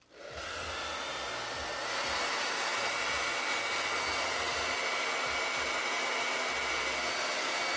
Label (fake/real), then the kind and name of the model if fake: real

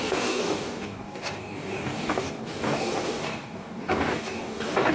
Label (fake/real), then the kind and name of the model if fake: fake, codec, DAC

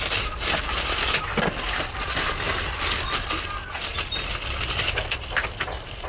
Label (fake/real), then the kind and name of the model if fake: real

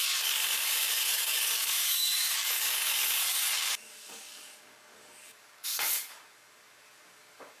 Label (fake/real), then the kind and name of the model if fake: fake, codec, DAC